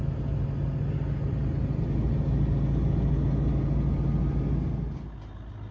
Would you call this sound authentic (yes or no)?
yes